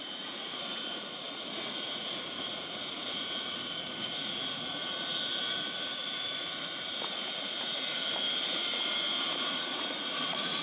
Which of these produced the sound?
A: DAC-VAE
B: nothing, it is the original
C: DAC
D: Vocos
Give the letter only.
D